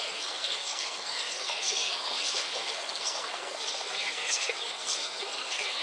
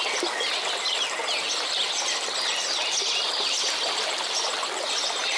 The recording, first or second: second